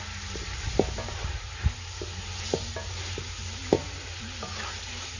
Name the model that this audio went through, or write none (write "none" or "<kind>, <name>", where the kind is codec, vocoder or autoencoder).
none